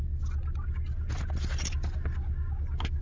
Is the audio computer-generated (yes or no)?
no